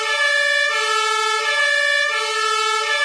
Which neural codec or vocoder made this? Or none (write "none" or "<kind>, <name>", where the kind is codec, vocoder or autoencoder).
none